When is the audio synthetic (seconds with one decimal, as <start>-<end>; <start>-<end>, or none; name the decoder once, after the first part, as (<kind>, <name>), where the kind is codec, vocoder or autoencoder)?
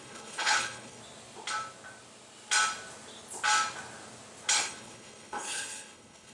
0.0-1.0 (codec, HILCodec); 4.5-6.3